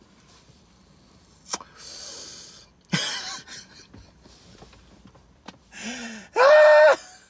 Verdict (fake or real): real